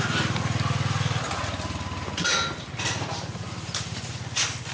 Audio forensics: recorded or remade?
recorded